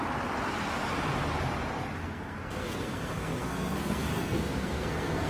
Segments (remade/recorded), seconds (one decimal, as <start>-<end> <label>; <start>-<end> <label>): 0.0-2.0 recorded; 2.0-5.3 remade